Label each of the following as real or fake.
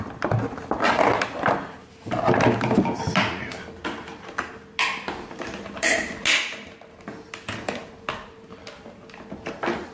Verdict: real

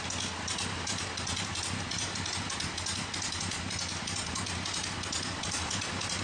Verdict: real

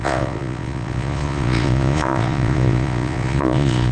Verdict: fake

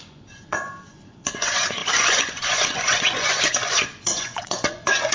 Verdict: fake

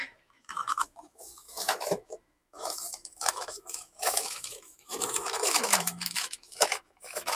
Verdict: fake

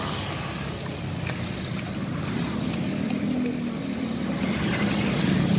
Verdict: real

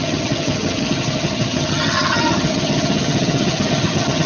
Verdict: fake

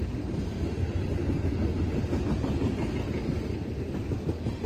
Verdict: real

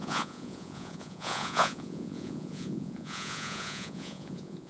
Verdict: fake